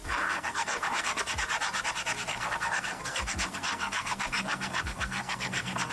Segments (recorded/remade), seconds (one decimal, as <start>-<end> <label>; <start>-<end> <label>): 0.0-1.2 remade; 1.2-2.3 recorded; 2.3-5.9 remade